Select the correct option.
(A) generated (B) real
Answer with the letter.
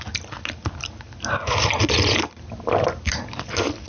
B